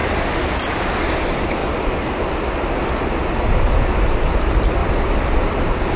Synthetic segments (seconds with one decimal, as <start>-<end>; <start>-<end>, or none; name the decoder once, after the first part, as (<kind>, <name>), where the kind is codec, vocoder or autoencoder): 1.6-2.5 (vocoder, BigVGAN v2); 4.8-5.3